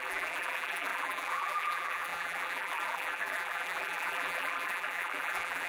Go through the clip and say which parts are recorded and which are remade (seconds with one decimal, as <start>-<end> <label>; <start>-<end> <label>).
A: 0.0-5.7 remade